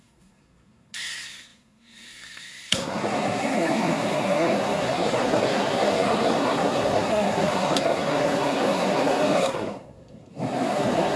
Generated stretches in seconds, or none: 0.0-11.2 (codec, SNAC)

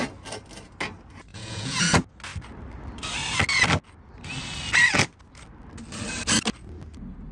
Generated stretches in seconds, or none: 1.3-1.9 (vocoder, Vocos)

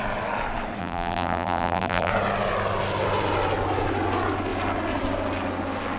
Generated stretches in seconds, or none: 0.8-2.1 (vocoder, BigVGAN v2)